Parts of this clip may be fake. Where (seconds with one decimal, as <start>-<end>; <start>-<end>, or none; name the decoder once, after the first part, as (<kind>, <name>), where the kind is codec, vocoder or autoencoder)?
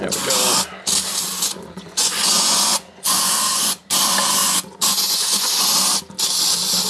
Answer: 1.3-3.8 (vocoder, Vocos); 4.4-5.5